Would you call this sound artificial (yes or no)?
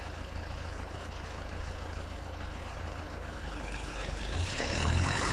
yes